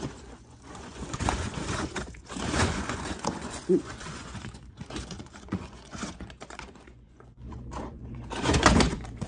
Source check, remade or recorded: remade